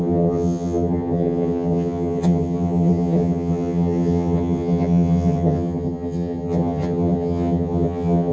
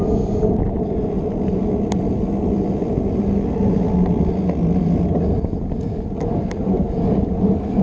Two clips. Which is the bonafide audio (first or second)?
second